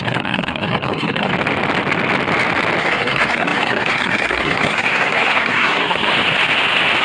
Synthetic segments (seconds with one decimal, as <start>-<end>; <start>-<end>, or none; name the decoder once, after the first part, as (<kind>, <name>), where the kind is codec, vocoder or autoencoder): 0.0-1.3 (codec, SNAC); 2.8-6.1